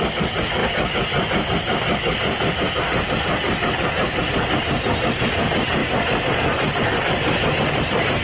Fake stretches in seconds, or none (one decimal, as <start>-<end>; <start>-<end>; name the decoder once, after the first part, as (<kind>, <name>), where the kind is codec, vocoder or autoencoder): none